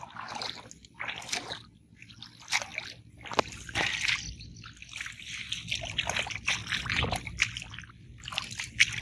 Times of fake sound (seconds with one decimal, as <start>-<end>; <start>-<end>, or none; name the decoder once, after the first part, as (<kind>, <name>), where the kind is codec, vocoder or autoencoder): none